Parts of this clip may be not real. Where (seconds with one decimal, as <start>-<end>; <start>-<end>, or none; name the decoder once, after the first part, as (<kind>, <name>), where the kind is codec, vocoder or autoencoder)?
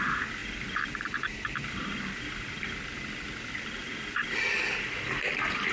none